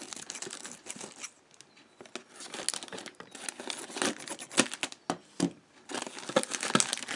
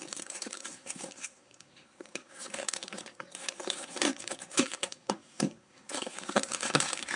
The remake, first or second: second